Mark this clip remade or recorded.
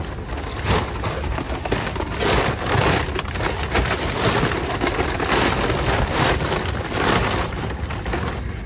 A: recorded